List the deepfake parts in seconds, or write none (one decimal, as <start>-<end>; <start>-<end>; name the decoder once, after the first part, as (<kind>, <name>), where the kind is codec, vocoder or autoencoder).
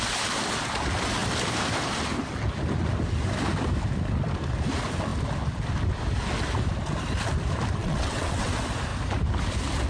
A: 7.8-8.5 (vocoder, WaveNeXt)